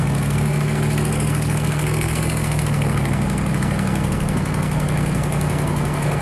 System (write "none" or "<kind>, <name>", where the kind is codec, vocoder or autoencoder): codec, SNAC